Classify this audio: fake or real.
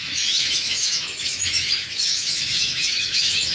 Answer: fake